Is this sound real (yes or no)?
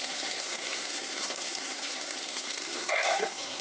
no